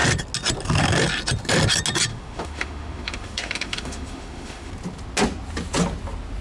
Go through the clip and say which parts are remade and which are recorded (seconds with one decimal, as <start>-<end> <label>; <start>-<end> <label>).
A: 0.0-2.1 recorded; 2.1-4.7 remade; 4.7-6.4 recorded